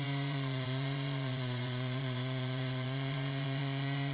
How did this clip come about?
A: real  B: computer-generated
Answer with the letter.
B